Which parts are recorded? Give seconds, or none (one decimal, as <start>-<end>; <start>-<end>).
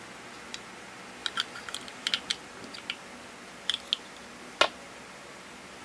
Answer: 0.0-5.8